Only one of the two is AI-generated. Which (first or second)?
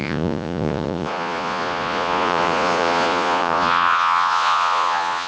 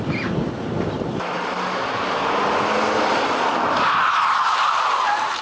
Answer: first